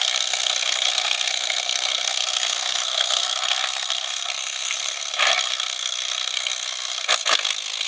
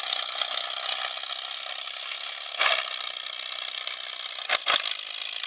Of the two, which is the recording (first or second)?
second